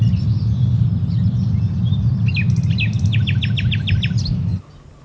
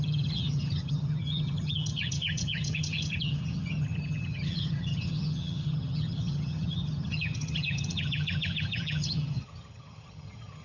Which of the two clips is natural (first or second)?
first